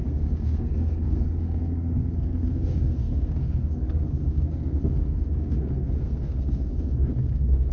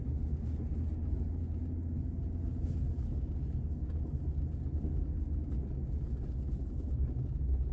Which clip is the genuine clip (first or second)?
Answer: second